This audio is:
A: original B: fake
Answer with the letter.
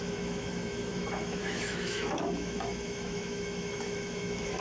B